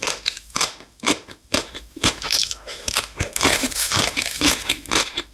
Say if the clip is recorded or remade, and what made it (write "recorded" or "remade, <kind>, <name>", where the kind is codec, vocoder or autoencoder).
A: remade, autoencoder, DAC-VAE